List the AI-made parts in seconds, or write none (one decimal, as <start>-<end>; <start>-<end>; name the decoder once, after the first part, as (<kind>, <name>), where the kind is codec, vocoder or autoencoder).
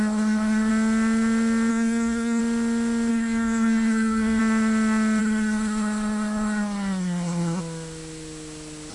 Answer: 0.0-0.7 (codec, SNAC); 1.7-2.4; 3.1-4.4; 5.2-7.6